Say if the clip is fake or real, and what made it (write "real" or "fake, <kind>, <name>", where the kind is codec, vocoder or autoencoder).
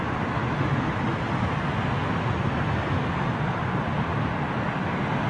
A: real